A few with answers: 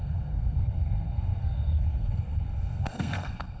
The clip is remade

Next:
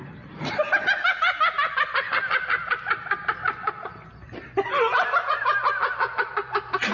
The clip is recorded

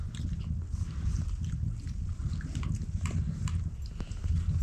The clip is recorded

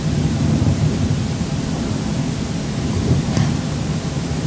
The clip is recorded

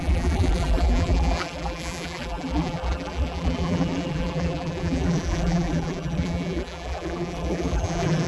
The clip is remade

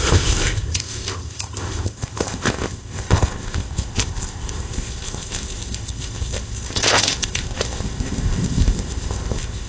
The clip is remade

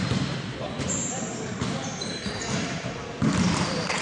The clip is remade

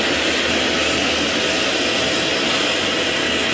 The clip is recorded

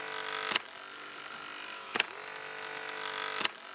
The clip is recorded